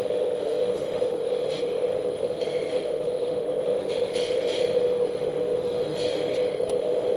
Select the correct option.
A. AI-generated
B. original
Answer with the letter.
A